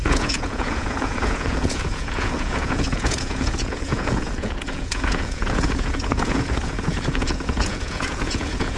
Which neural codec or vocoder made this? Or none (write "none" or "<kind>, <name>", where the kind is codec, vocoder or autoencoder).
vocoder, Vocos